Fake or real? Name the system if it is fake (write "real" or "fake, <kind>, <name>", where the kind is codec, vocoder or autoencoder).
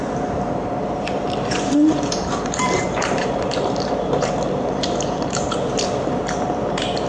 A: fake, vocoder, BigVGAN v2